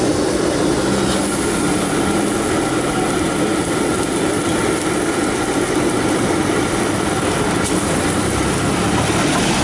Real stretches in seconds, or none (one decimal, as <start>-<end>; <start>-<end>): 0.0-9.6